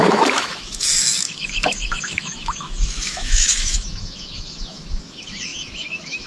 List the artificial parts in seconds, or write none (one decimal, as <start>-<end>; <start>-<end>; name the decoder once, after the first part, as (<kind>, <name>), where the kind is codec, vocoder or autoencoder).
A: 0.0-6.3 (autoencoder, DAC-VAE)

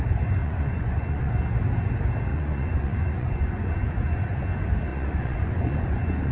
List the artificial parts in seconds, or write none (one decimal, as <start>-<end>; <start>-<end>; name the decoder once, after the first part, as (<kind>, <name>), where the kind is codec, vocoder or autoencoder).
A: 0.4-1.3 (vocoder, Vocos); 2.3-4.4; 4.9-6.3

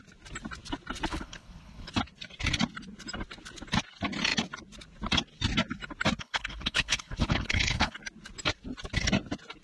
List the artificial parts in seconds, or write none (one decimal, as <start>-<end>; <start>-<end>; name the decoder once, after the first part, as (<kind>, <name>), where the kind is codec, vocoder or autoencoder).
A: 1.1-1.9 (codec, HILCodec); 6.2-8.0